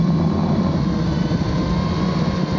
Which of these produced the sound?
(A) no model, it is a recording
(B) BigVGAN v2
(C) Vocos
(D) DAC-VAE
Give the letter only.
A